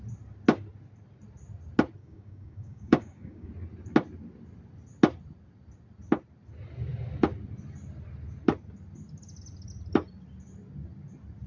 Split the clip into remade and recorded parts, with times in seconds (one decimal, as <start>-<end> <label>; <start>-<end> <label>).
0.0-2.0 recorded; 2.0-3.5 remade; 3.5-11.5 recorded